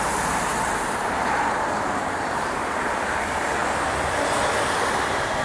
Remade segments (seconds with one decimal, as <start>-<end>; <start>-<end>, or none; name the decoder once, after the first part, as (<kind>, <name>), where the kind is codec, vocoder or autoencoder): none